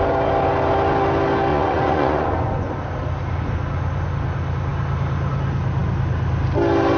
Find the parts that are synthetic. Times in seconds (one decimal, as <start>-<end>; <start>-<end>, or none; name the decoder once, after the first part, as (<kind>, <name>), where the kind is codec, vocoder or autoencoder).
1.5-2.7 (vocoder, Vocos)